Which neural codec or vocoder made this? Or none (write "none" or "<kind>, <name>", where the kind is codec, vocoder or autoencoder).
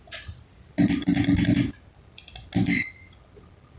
none